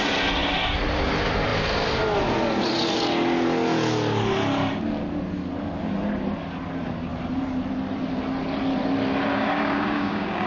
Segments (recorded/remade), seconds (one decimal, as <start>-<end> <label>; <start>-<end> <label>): 0.0-9.3 recorded; 9.3-10.5 remade